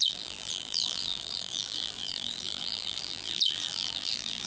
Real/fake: fake